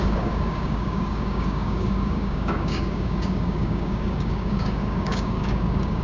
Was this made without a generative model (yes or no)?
no